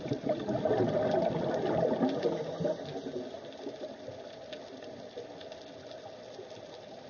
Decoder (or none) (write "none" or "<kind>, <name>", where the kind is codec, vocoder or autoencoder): none